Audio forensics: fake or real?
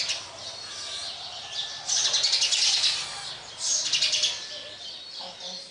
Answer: real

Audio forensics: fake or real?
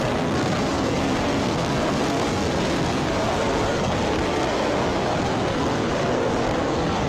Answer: fake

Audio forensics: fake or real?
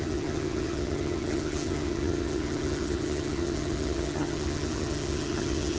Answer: fake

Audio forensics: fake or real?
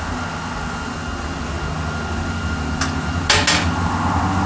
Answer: real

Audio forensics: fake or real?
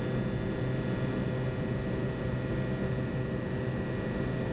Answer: real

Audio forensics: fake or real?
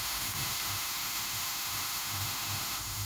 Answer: fake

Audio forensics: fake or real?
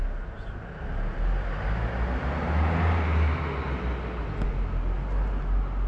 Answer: real